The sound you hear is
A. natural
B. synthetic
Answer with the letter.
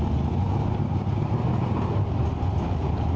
A